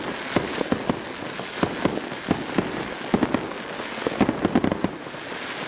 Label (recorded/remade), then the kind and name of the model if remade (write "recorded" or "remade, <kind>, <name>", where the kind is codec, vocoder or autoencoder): recorded